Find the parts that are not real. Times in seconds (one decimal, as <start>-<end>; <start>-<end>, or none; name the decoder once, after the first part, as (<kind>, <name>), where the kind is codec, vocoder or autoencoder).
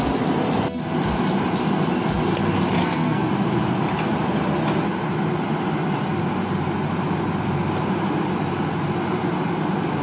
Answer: 2.8-3.3 (codec, SNAC)